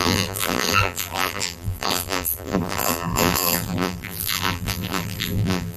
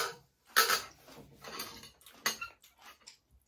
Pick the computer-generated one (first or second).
first